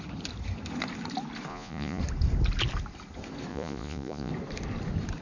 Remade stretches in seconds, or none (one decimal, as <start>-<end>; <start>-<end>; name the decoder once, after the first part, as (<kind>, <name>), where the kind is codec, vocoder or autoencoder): 1.5-2.0 (vocoder, Vocos); 3.5-4.3